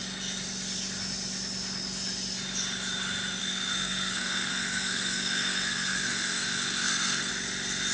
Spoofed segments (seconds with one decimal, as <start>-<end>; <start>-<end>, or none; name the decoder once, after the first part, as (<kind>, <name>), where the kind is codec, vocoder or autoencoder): 3.4-7.3 (codec, SNAC)